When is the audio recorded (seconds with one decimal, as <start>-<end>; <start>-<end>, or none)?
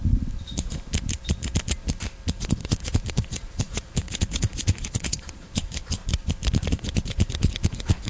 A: 0.0-2.4; 6.0-6.7